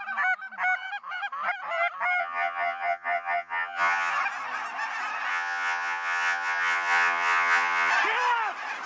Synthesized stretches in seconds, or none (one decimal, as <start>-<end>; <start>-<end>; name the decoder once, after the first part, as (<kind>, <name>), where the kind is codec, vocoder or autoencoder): 2.2-4.1 (vocoder, HiFi-GAN); 5.3-7.9